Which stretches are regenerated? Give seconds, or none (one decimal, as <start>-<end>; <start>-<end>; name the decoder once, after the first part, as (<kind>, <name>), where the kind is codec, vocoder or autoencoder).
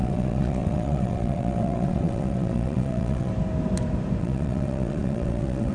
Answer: 0.0-3.3 (vocoder, WaveNeXt); 4.2-5.7